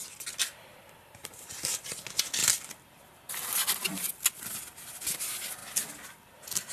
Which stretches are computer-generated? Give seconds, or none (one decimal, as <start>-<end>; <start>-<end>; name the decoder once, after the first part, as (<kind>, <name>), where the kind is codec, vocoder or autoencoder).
0.7-2.0 (vocoder, BigVGAN v2)

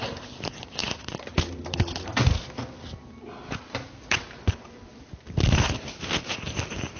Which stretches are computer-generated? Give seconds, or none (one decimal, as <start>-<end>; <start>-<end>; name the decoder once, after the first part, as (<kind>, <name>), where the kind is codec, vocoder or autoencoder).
none

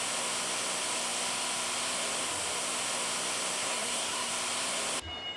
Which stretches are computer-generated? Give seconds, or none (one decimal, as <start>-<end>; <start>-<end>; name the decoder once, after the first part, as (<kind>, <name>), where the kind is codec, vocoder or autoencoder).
3.6-4.3 (codec, SNAC)

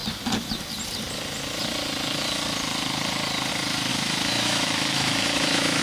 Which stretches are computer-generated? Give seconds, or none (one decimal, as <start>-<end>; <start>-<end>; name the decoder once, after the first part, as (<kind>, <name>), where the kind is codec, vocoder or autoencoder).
3.9-5.8 (autoencoder, DAC-VAE)

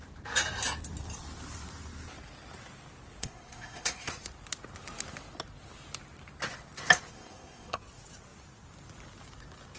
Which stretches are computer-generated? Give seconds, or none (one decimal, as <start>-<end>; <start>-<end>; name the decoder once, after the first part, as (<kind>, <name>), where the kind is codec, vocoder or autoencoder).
3.2-4.1 (codec, SNAC); 7.1-7.8

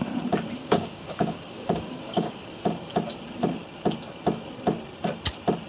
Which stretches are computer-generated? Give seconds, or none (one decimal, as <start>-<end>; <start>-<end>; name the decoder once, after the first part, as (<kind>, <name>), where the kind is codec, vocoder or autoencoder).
0.6-2.6 (codec, DAC)